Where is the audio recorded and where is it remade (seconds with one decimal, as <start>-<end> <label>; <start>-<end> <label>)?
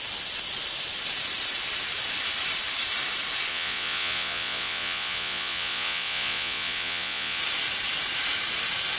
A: 0.0-3.5 recorded; 3.5-7.4 remade; 7.4-9.0 recorded